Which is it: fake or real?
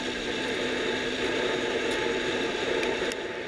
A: real